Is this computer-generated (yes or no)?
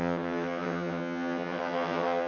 yes